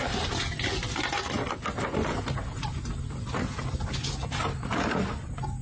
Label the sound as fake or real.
real